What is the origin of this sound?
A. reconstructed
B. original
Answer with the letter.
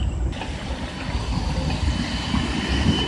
B